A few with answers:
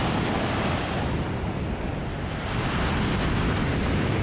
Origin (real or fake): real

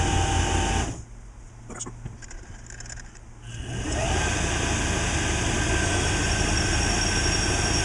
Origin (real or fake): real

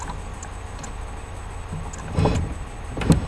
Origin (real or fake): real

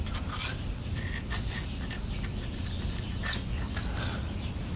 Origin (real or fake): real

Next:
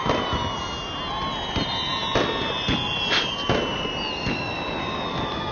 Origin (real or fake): real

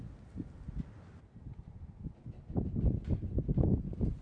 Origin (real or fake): real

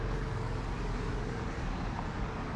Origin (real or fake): fake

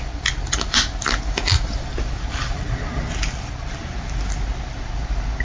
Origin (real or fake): real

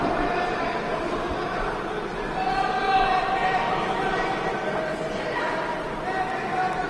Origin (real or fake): real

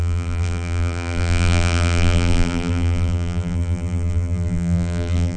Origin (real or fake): fake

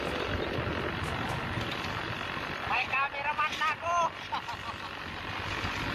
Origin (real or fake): fake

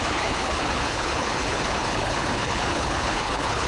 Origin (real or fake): fake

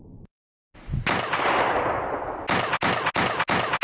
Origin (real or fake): real